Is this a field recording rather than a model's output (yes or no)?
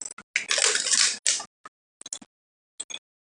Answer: yes